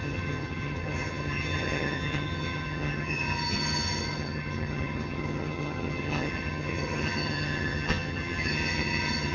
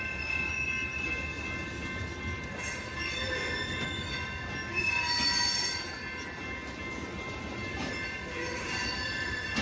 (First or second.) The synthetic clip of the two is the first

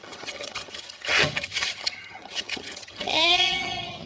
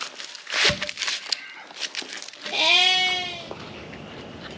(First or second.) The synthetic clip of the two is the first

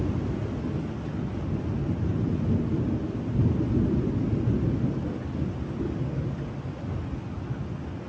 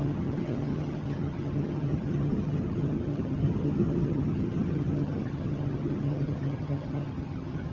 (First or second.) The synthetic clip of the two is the second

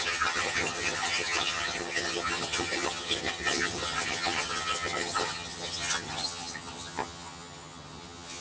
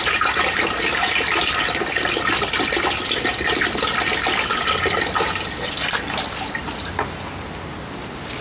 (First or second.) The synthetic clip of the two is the first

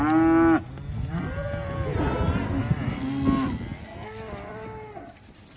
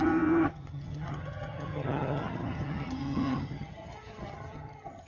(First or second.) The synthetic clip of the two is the second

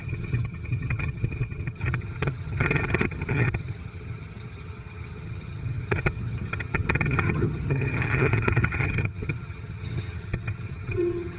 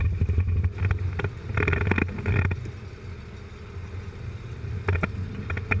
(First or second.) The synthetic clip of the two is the first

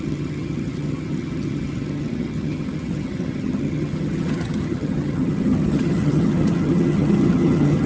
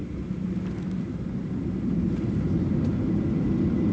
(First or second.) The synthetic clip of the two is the first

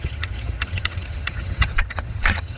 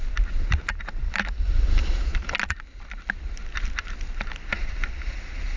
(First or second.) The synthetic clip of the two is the first